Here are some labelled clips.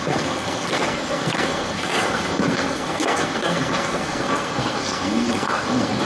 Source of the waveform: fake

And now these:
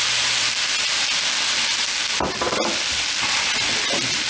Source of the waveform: real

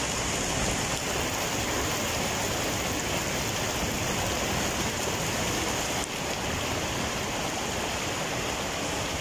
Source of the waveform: real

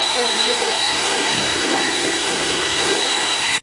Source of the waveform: fake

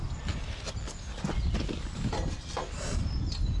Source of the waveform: real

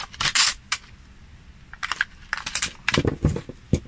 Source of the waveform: real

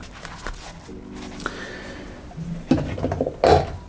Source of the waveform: real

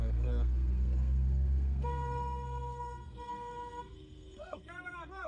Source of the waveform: fake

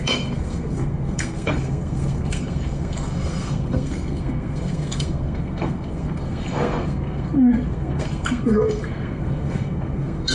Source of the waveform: fake